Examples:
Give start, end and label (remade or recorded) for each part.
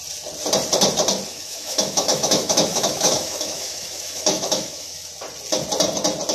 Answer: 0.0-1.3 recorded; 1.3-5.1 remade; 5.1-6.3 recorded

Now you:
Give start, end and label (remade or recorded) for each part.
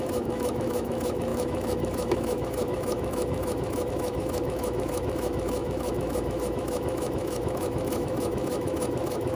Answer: 0.0-9.4 remade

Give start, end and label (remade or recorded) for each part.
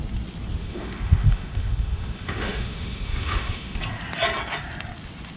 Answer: 0.0-0.6 recorded; 0.6-3.8 remade; 3.8-5.4 recorded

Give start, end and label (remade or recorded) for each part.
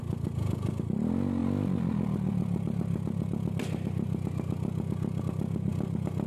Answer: 0.0-6.3 recorded